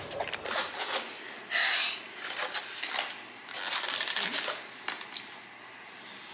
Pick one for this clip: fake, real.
real